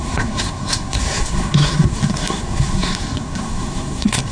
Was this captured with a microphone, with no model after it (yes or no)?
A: no